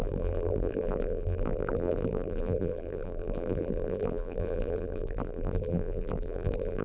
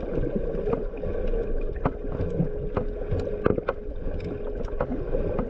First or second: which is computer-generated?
first